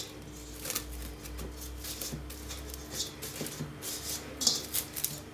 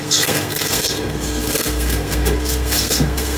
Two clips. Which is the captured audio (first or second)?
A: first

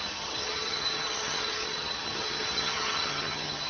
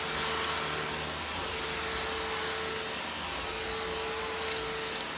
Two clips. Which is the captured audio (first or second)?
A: second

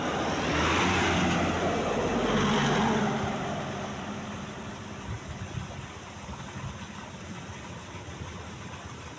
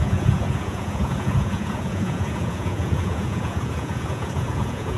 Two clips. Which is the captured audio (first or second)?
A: first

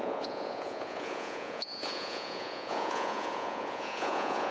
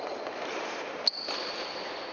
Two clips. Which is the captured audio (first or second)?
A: second